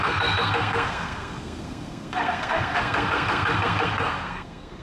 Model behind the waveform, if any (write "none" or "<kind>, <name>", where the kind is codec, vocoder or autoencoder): codec, SNAC